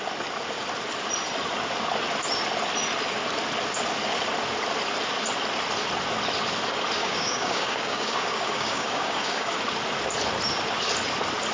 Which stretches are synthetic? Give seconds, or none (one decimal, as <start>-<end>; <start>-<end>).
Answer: 7.0-9.6